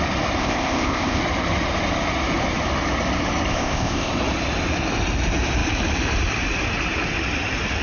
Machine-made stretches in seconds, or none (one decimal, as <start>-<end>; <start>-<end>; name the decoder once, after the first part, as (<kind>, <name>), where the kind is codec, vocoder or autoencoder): 0.4-1.2 (codec, ZipCodec); 3.5-4.1

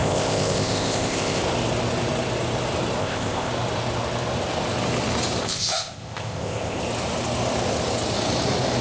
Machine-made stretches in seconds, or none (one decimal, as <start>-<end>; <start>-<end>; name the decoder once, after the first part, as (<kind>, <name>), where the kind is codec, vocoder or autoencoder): 0.0-1.4 (codec, ZipCodec); 3.0-3.5; 5.4-6.8